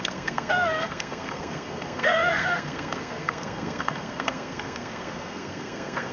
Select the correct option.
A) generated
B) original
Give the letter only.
A